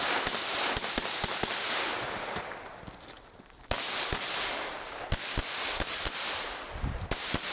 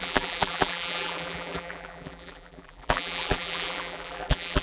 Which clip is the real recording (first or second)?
first